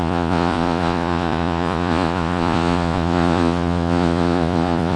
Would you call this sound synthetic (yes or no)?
yes